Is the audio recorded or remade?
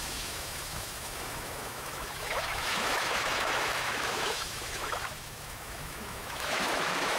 remade